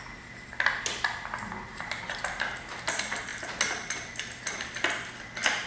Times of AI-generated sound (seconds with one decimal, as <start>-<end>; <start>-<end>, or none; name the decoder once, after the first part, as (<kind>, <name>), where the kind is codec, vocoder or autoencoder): none